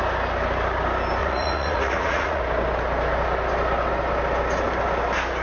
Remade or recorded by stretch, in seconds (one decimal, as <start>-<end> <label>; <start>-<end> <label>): 0.0-1.2 recorded; 1.2-2.4 remade; 2.4-5.4 recorded